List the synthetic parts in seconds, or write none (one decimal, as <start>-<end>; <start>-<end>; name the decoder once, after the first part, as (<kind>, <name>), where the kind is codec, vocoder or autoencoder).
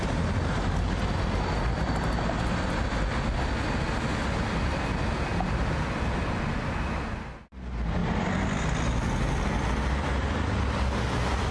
none